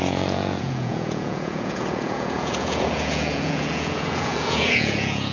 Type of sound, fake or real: fake